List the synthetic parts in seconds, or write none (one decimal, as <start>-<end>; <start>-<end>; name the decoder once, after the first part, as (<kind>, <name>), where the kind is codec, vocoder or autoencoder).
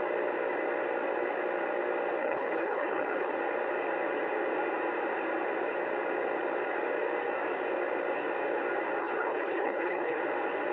2.2-3.3 (codec, HILCodec); 9.0-10.2